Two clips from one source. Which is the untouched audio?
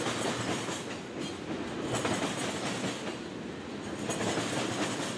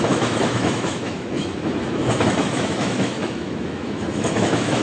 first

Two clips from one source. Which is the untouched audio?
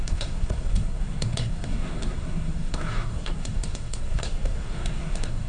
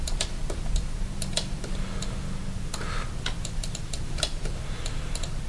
second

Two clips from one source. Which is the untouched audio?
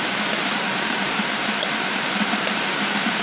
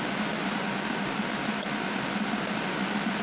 second